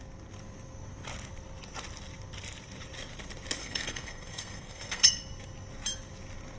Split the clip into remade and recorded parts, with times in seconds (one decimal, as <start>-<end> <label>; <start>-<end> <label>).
0.0-3.6 recorded; 3.6-5.1 remade; 5.1-6.6 recorded